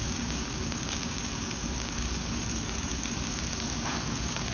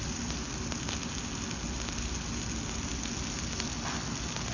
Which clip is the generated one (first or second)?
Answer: first